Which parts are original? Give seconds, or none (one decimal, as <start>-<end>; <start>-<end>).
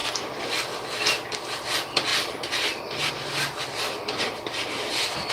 0.0-5.3